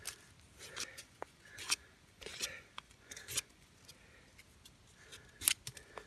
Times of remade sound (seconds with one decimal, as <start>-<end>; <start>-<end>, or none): 0.9-3.8

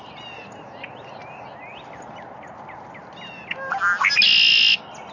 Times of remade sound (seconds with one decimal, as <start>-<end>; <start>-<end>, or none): none

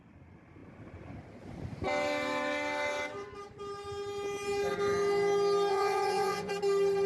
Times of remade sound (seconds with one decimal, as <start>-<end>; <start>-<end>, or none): 5.7-6.5

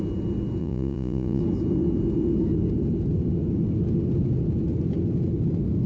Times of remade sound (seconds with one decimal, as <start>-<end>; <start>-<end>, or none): 0.6-1.4

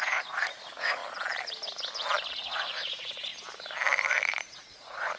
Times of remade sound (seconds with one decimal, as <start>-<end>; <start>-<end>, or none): 0.0-1.0; 2.3-3.3; 4.3-5.2

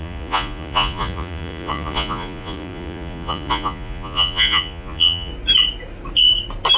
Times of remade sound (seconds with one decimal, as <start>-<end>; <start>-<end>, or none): 0.0-5.3